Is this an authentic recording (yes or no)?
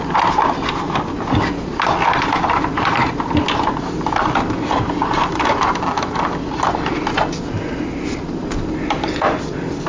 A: yes